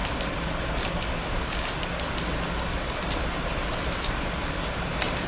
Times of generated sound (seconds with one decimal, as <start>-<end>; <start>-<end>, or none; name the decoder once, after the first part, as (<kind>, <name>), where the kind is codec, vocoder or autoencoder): 3.2-5.3 (vocoder, BigVGAN v2)